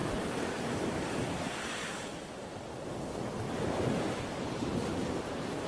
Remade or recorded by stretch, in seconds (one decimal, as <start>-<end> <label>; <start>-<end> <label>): 0.0-0.6 recorded; 0.6-2.5 remade; 2.5-3.9 recorded; 3.9-5.7 remade